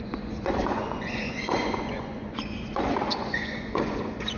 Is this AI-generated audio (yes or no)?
yes